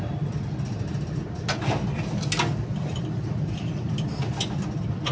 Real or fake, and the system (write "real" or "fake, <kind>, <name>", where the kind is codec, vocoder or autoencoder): real